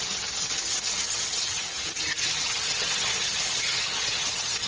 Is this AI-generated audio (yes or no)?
yes